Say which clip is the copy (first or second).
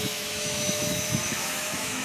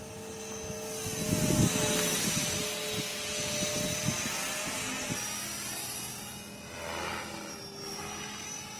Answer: first